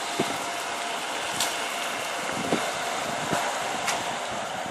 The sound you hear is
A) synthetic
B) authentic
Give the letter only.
B